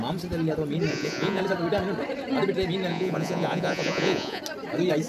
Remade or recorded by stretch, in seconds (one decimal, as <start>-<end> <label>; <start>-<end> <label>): 0.0-0.9 recorded; 0.9-1.4 remade; 1.4-2.9 recorded; 2.9-4.4 remade; 4.4-5.1 recorded